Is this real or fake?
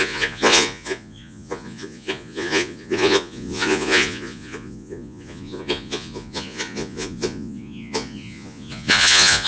fake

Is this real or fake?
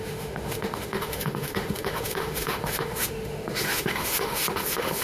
fake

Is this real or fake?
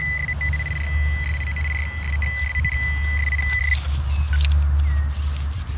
real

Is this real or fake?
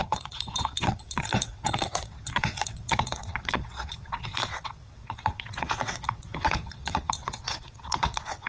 fake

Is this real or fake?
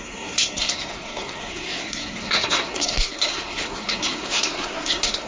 fake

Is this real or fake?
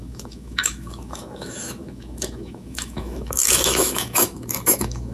fake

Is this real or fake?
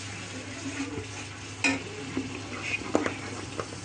real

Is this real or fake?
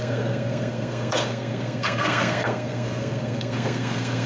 fake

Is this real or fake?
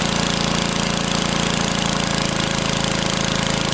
fake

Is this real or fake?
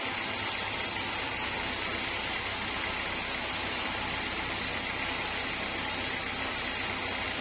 real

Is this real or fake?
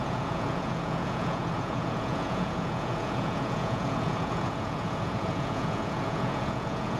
fake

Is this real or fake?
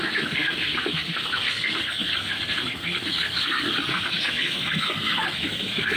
fake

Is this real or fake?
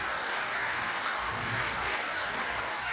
fake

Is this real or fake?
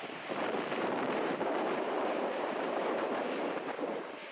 fake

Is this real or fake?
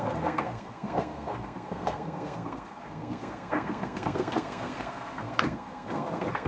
fake